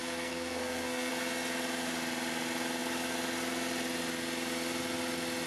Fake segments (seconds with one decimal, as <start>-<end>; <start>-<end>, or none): 0.0-1.1